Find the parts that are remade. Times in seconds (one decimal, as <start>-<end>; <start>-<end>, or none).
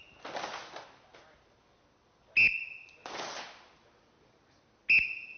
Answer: none